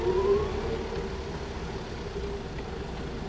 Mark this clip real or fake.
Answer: real